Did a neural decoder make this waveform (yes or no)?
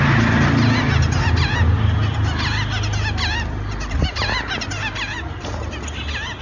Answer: no